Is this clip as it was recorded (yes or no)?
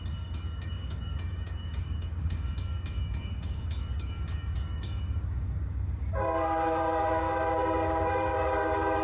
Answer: no